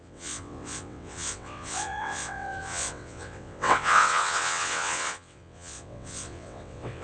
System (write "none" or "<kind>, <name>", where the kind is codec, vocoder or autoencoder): vocoder, WaveNeXt